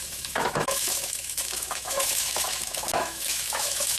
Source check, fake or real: fake